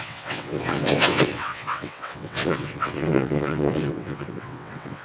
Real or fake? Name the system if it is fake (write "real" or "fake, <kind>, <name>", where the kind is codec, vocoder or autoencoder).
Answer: fake, vocoder, WaveNeXt